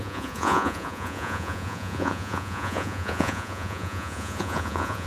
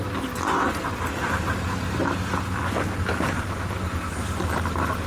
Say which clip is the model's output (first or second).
first